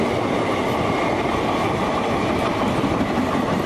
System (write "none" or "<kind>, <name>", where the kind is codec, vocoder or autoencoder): none